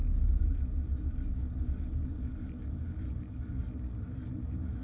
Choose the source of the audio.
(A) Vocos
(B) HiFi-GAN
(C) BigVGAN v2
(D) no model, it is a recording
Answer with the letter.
C